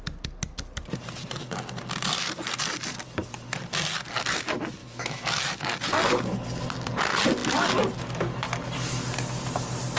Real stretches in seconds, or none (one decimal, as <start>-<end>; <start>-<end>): 0.0-4.8; 5.4-10.0